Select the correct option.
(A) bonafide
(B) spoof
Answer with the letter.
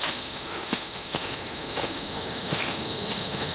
B